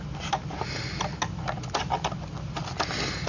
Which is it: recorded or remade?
recorded